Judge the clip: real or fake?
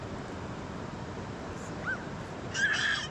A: real